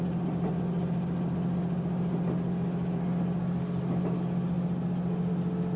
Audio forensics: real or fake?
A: real